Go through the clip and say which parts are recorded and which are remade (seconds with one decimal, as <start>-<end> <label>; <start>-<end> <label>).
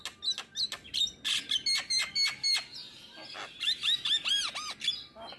0.0-5.4 recorded